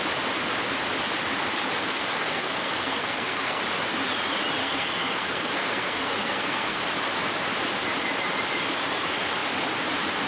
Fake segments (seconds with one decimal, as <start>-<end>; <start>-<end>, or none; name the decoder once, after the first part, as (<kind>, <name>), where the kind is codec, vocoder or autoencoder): 1.8-3.6 (codec, SNAC); 4.6-6.8